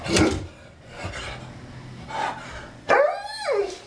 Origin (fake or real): real